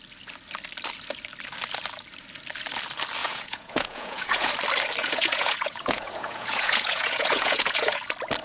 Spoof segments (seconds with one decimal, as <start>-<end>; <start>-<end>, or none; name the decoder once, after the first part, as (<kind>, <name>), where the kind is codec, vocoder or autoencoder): 3.2-4.5 (vocoder, Vocos); 5.0-8.0

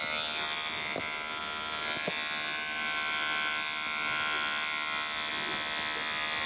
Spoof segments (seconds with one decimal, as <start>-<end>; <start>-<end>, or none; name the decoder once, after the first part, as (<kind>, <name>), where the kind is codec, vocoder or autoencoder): none

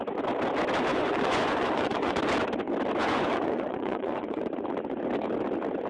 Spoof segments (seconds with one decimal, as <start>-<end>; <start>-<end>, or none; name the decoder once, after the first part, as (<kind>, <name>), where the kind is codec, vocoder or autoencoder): 0.9-2.2 (vocoder, Vocos); 3.0-4.4

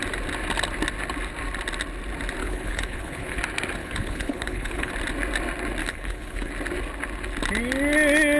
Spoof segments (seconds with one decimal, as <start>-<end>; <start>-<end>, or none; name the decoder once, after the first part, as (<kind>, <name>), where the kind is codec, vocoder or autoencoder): 2.4-3.4 (codec, HILCodec); 3.8-4.9; 5.8-6.5

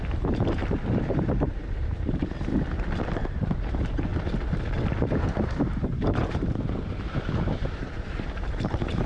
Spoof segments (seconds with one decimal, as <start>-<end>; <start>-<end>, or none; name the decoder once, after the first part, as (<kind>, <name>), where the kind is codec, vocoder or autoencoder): 0.0-2.5 (vocoder, BigVGAN v2); 3.1-4.1; 5.0-9.1

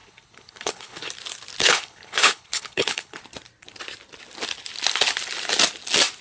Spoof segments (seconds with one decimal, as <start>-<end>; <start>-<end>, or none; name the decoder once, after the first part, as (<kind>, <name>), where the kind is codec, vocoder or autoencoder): 0.0-1.1 (codec, HILCodec); 1.6-3.2

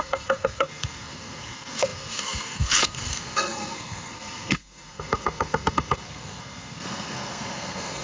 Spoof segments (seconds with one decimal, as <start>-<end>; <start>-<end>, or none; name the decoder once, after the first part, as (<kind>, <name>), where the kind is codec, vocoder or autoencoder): 0.0-8.0 (codec, SNAC)

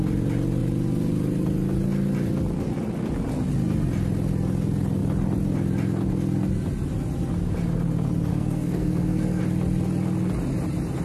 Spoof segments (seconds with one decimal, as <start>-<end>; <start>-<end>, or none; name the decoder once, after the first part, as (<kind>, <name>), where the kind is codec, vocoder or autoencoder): 8.3-9.4 (codec, SNAC)